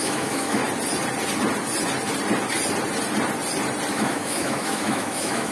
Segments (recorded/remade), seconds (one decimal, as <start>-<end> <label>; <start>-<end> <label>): 0.0-0.6 remade; 0.6-3.9 recorded; 3.9-5.5 remade